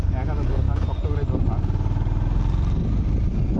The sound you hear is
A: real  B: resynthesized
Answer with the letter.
A